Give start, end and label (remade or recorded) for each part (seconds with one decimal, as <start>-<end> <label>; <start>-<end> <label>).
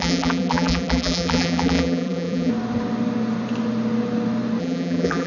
0.0-2.5 remade; 2.5-4.6 recorded; 4.6-5.3 remade